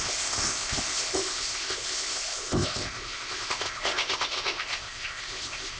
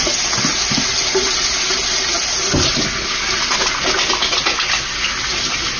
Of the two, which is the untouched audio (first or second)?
second